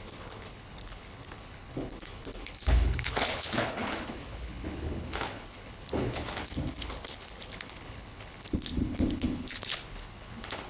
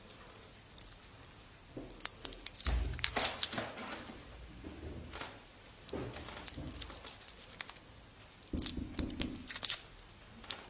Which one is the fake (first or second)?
first